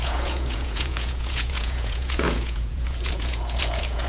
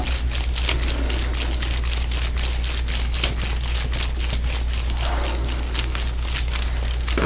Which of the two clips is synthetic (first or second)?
first